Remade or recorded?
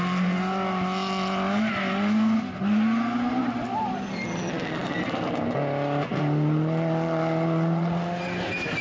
recorded